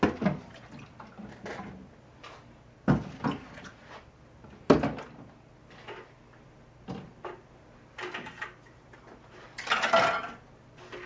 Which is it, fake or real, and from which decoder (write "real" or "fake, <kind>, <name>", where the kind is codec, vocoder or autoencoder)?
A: real